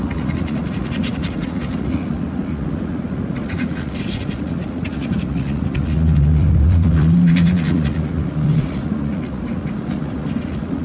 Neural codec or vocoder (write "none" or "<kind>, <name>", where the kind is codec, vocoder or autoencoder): vocoder, Vocos